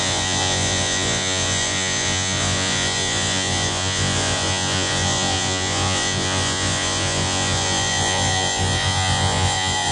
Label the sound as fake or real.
fake